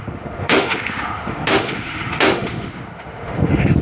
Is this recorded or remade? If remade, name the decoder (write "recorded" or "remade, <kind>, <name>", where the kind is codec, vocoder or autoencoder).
remade, autoencoder, DAC-VAE